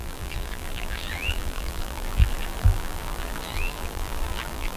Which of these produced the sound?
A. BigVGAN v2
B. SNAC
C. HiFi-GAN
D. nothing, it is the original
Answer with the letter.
A